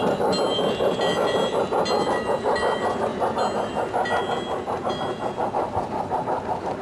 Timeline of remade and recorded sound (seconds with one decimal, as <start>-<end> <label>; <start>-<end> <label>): 0.0-6.8 recorded